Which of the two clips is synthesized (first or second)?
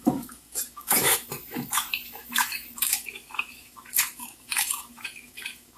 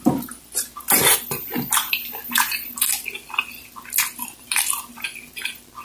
first